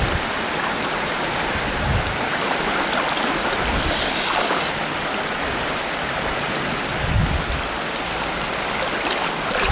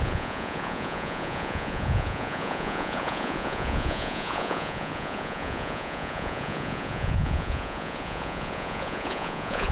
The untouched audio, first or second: first